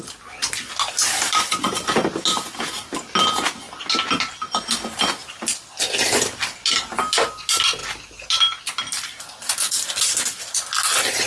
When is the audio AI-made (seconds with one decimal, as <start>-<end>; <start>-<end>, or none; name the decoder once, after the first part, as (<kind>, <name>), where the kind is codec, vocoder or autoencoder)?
none